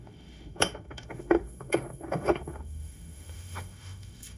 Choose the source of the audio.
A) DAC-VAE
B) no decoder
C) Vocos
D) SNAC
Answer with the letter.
A